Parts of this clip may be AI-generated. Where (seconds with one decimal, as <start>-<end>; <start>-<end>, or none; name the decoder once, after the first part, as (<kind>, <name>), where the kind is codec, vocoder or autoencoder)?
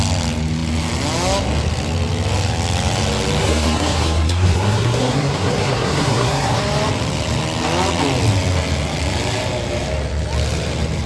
3.4-6.6 (codec, SNAC)